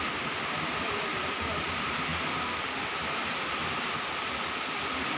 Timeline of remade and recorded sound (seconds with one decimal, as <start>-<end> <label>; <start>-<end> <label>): 0.0-5.2 recorded